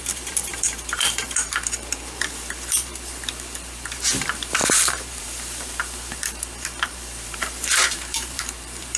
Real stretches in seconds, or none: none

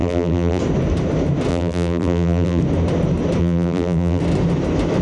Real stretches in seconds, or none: 0.6-1.5; 2.6-3.4; 4.2-5.0

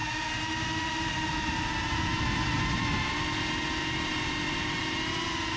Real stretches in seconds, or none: 3.2-3.8

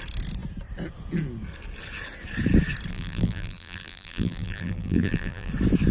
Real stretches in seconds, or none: 0.0-2.9; 5.5-5.9

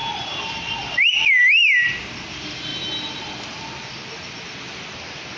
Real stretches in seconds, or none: 1.6-5.4

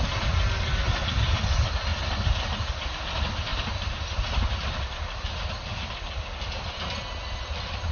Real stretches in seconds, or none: 0.0-7.9

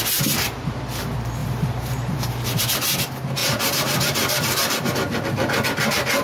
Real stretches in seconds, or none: 0.0-1.4; 2.6-3.4; 4.9-6.2